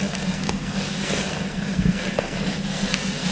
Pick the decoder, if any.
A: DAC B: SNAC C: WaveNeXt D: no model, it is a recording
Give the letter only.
B